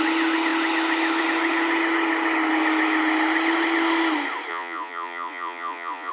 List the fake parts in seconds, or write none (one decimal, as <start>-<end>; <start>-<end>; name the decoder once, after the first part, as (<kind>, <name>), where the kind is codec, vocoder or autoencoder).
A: 4.5-6.1 (vocoder, Vocos)

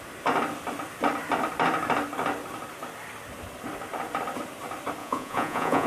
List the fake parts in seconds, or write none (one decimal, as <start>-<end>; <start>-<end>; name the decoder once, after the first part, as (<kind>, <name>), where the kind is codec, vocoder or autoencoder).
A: 5.0-5.9 (vocoder, Vocos)

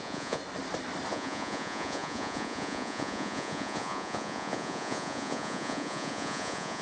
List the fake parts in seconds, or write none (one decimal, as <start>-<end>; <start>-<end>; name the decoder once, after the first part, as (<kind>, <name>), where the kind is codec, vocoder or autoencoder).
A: 0.0-0.4 (vocoder, Vocos); 1.1-6.8

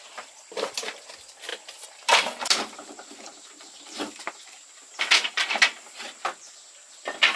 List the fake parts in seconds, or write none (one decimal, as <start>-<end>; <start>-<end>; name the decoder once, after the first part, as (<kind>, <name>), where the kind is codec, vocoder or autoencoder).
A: none

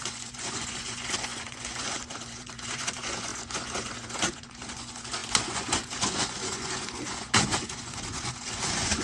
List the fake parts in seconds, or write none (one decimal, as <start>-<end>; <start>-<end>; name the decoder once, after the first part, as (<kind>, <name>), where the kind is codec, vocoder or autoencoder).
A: 0.0-9.0 (vocoder, Vocos)

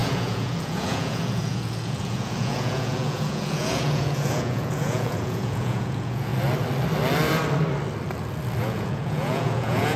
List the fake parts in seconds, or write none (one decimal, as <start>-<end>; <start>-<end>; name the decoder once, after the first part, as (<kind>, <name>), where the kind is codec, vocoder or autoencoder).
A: 0.0-6.3 (vocoder, Vocos); 8.6-10.0

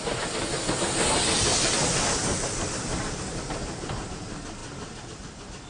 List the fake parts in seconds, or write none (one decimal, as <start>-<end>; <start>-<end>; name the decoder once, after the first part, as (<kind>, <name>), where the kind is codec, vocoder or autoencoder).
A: none

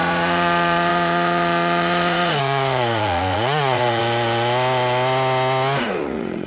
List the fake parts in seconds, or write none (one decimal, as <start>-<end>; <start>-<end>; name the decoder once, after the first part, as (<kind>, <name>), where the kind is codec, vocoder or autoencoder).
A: 0.0-4.0 (vocoder, Vocos); 5.8-6.5